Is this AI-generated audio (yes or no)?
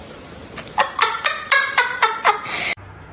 no